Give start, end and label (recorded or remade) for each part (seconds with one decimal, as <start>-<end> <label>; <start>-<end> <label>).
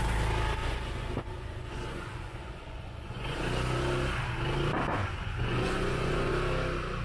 0.0-0.6 recorded; 0.6-3.4 remade; 3.4-5.0 recorded; 5.0-6.3 remade; 6.3-7.0 recorded